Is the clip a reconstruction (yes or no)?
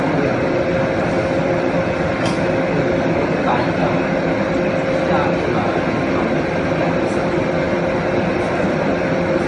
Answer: no